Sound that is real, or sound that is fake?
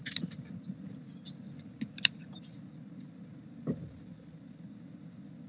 real